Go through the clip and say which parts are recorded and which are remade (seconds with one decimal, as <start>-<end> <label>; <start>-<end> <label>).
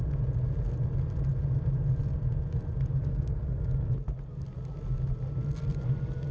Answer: 0.0-3.1 recorded; 3.1-3.6 remade; 3.6-6.3 recorded